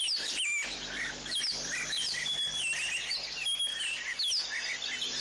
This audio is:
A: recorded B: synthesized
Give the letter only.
A